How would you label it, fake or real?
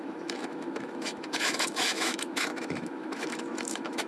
fake